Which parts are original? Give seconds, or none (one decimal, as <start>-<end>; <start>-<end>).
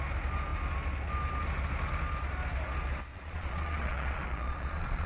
0.0-3.1